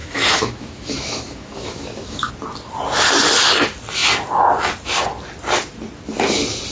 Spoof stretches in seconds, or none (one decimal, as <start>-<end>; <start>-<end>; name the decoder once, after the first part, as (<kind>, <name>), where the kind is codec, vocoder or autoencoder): 0.0-2.3 (autoencoder, DAC-VAE)